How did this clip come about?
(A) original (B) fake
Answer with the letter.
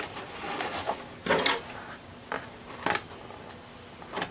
A